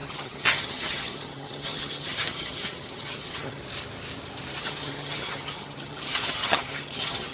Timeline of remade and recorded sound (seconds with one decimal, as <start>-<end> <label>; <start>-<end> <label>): 0.0-3.6 remade; 3.6-4.6 recorded; 4.6-7.3 remade